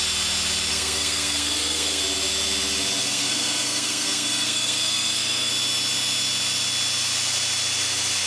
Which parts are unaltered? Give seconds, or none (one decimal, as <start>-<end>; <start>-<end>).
0.0-0.7; 2.0-3.0; 5.5-8.3